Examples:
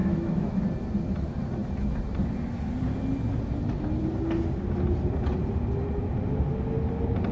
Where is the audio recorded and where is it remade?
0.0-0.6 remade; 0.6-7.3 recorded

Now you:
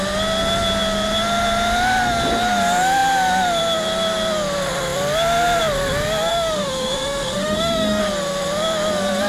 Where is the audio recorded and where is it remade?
0.0-6.3 recorded; 6.3-8.0 remade; 8.0-9.3 recorded

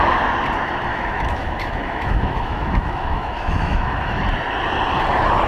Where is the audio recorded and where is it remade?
0.0-0.9 recorded; 0.9-4.2 remade; 4.2-5.5 recorded

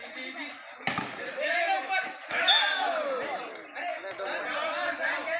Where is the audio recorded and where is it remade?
0.0-1.3 recorded; 1.3-2.6 remade; 2.6-5.4 recorded